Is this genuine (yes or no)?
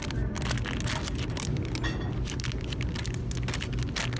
yes